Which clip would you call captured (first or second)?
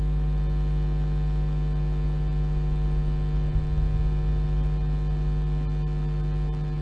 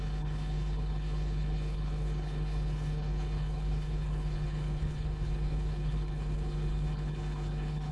first